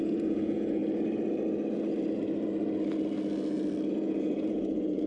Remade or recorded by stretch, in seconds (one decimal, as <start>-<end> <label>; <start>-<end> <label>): 0.0-0.8 remade; 0.8-3.9 recorded; 3.9-5.1 remade